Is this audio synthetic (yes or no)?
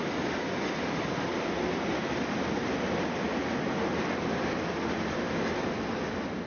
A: no